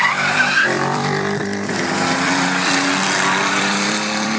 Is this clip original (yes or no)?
no